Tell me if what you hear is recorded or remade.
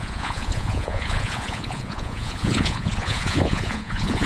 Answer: remade